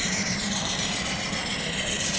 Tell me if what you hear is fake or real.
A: fake